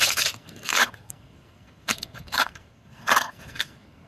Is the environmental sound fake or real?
fake